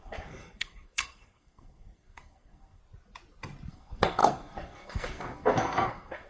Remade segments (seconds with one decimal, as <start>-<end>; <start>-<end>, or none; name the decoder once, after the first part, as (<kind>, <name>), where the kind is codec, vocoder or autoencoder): 0.0-2.8 (codec, SNAC); 3.7-6.3